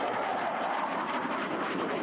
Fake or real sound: fake